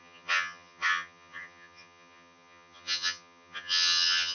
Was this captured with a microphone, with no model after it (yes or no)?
no